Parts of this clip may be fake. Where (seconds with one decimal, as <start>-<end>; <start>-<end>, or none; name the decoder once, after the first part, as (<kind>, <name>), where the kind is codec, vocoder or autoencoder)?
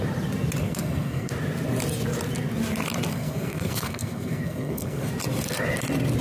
0.6-1.3 (codec, SNAC); 3.1-5.1